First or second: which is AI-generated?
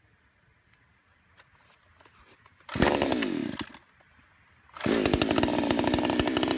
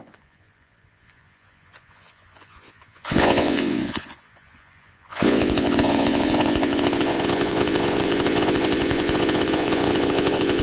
second